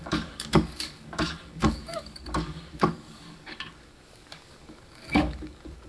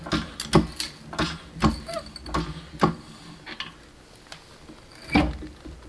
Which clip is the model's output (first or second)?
first